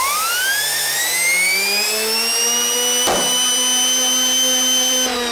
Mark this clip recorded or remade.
recorded